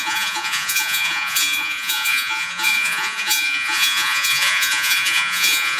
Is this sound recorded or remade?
remade